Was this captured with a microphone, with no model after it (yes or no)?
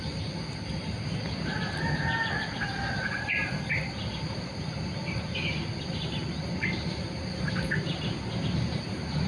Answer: yes